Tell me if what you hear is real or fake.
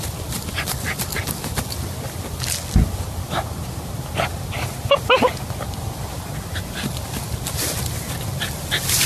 real